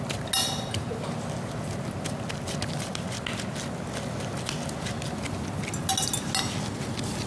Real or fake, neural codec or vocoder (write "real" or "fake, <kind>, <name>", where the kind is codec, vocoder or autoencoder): real